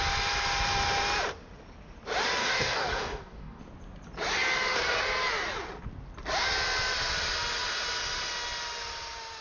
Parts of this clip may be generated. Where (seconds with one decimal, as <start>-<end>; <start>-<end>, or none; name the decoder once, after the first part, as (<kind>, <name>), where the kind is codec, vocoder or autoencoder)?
2.4-3.6 (codec, DAC)